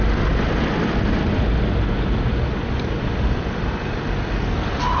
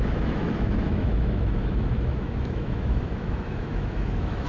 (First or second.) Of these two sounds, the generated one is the second